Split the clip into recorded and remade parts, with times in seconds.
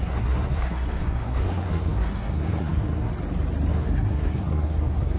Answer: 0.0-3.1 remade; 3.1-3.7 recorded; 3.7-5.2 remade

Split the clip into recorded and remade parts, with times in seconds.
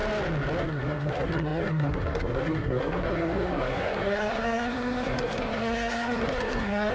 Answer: 0.0-0.6 recorded; 0.6-6.9 remade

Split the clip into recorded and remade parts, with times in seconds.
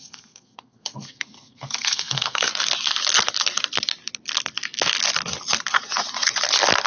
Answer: 0.0-2.5 remade; 2.5-6.9 recorded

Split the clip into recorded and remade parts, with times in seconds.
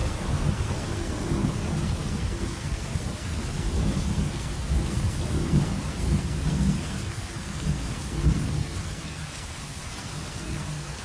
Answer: 0.0-11.0 remade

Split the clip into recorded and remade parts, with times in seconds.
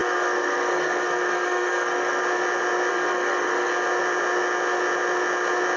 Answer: 0.0-2.2 remade; 2.2-2.9 recorded; 2.9-3.7 remade; 3.7-5.8 recorded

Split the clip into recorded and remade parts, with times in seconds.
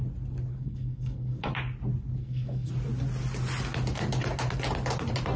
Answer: 0.0-0.5 recorded; 0.5-1.5 remade; 1.5-2.2 recorded; 2.2-2.7 remade; 2.7-5.4 recorded